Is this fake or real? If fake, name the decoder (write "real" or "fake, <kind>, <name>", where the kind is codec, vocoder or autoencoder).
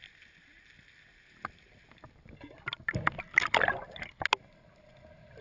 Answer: real